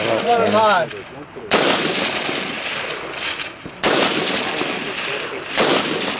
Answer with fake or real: real